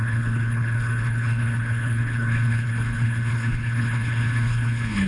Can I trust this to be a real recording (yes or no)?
no